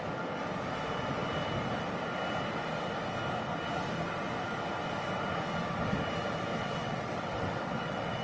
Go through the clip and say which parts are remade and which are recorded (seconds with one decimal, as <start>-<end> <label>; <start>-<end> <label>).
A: 0.0-6.5 recorded; 6.5-8.2 remade